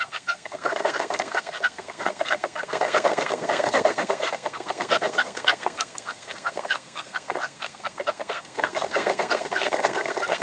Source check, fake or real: fake